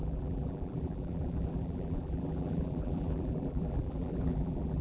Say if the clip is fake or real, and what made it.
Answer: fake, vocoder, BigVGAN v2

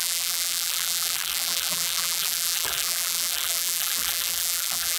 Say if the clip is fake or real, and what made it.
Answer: fake, vocoder, BigVGAN v2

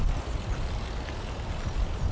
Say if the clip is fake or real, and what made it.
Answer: real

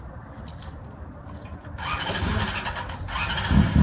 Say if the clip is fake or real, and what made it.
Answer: real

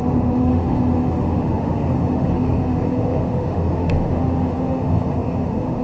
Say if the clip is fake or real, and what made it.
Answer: fake, autoencoder, DAC-VAE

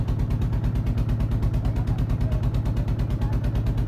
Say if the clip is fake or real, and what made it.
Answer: real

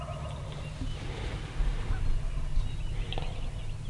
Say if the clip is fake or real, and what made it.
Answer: real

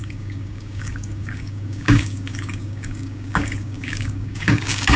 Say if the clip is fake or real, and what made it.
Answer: fake, codec, DAC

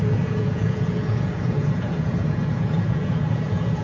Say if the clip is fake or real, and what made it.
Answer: fake, vocoder, Vocos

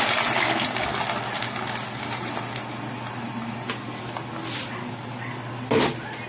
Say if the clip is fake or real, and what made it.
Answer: real